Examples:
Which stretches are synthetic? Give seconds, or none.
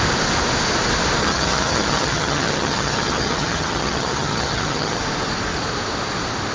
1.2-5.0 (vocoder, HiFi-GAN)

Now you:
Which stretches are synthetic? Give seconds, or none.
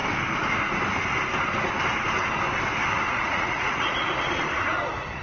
3.1-5.2 (vocoder, Vocos)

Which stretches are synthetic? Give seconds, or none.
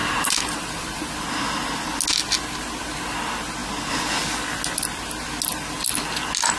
0.0-1.1 (vocoder, BigVGAN v2)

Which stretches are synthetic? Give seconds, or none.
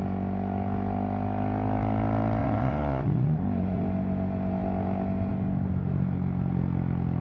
2.4-3.8 (vocoder, Vocos)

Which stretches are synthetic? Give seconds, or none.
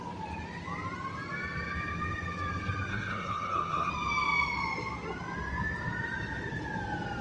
2.9-3.9 (codec, SNAC)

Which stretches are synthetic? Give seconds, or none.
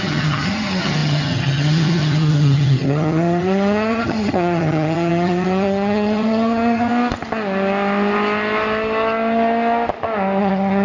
0.0-6.9 (vocoder, HiFi-GAN); 10.4-10.8